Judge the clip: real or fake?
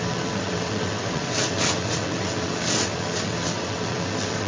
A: fake